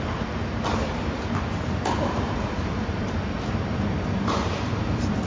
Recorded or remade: remade